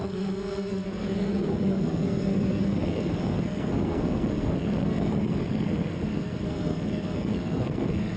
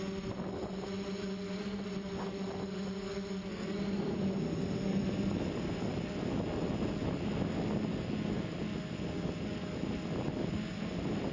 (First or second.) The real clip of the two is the second